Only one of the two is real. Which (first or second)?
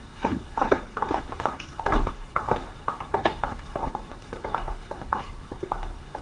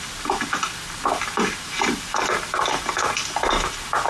second